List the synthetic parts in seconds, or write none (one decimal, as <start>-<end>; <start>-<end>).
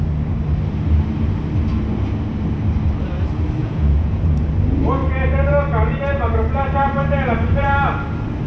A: 3.6-4.5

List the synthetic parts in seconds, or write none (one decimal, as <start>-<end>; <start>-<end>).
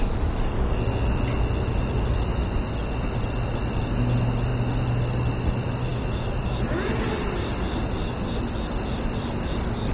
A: none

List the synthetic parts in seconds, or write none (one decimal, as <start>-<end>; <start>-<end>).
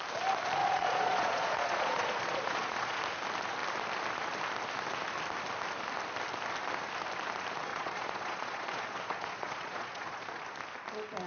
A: 0.6-3.0; 7.7-10.4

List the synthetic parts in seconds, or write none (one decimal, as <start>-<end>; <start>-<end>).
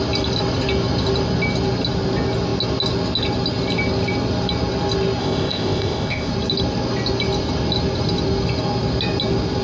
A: 5.2-6.3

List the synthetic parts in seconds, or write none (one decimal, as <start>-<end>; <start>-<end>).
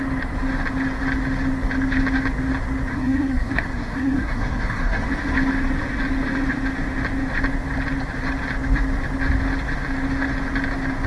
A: 2.9-5.0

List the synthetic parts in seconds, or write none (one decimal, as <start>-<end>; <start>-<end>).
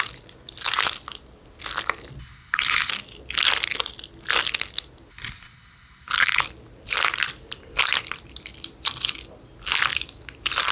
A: 2.2-2.9; 5.1-6.4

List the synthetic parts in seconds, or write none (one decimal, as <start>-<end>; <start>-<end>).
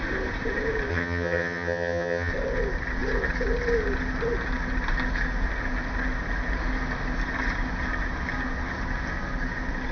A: 0.9-2.3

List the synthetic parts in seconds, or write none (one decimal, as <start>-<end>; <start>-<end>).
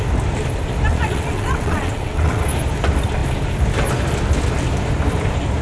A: 0.9-2.4